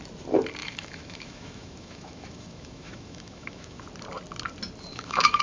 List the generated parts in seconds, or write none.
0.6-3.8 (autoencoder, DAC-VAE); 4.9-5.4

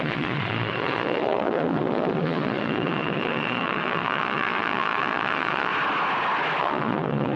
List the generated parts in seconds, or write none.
0.0-5.7 (vocoder, Vocos); 6.6-7.4

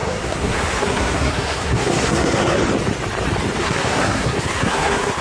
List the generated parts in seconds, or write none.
0.0-2.6 (codec, SNAC); 3.6-5.2

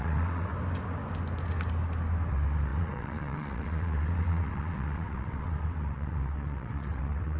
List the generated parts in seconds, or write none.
0.0-0.5 (vocoder, WaveNeXt); 2.3-7.4

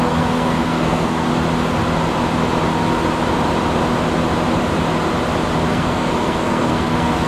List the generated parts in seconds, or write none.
0.0-1.3 (codec, SNAC); 5.7-7.3